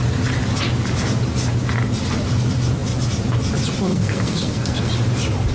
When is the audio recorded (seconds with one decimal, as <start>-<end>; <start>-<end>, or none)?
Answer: 0.0-3.9; 4.9-5.5